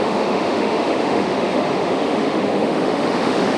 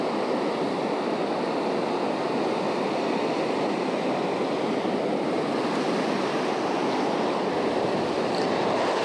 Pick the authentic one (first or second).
second